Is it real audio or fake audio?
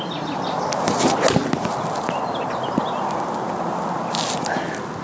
real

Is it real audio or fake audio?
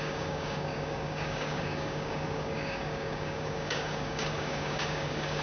fake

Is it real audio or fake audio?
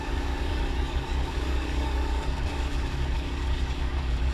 fake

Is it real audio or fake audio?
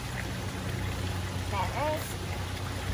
real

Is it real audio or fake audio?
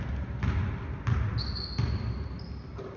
real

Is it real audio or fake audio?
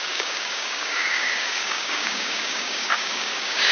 fake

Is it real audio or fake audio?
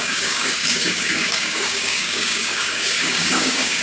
fake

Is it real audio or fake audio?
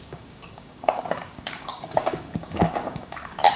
fake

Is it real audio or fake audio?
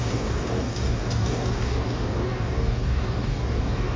fake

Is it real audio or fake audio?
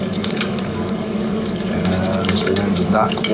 fake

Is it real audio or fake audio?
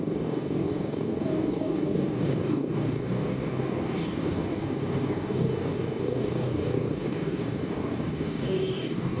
fake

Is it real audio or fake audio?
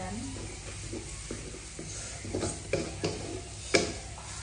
real